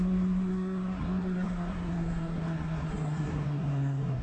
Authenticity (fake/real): fake